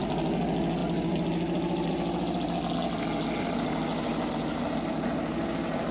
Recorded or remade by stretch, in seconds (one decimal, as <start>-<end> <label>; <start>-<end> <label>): 0.0-5.9 recorded

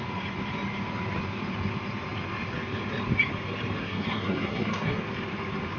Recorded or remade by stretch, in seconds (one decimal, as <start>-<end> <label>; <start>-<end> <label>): 0.0-3.8 recorded; 3.8-5.0 remade; 5.0-5.8 recorded

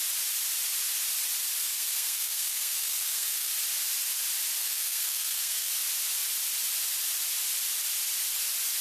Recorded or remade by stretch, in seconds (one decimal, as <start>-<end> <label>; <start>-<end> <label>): 0.0-1.6 recorded; 1.6-3.5 remade; 3.5-4.6 recorded; 4.6-5.7 remade; 5.7-8.8 recorded

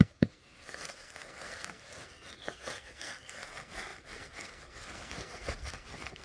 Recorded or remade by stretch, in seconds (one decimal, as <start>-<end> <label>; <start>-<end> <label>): 0.0-6.2 remade

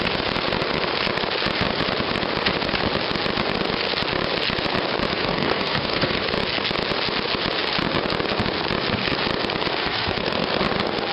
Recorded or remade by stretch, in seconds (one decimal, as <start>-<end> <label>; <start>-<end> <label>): 0.0-5.1 recorded; 5.1-6.2 remade; 6.2-9.8 recorded; 9.8-10.6 remade; 10.6-11.1 recorded

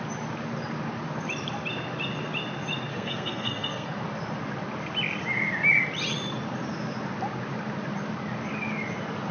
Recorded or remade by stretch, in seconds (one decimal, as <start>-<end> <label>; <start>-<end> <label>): 0.0-2.9 recorded; 2.9-4.0 remade; 4.0-9.3 recorded